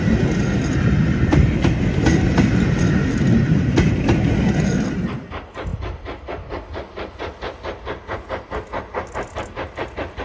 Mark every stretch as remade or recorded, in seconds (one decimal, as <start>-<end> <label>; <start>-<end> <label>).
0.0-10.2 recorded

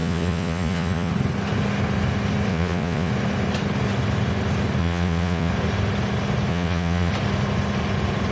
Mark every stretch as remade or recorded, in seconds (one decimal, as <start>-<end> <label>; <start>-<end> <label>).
0.0-1.1 remade; 1.1-2.5 recorded; 2.5-3.1 remade; 3.1-4.8 recorded; 4.8-5.5 remade; 5.5-6.5 recorded; 6.5-7.1 remade; 7.1-8.3 recorded

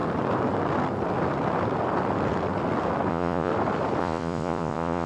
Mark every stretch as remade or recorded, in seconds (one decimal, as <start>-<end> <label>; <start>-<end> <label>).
0.0-3.1 recorded; 3.1-3.5 remade; 3.5-4.0 recorded; 4.0-5.1 remade

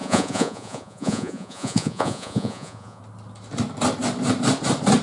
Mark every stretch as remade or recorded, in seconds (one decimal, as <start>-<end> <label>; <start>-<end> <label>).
0.0-3.0 remade; 3.0-5.0 recorded